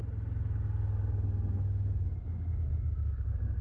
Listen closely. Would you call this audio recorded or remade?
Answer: recorded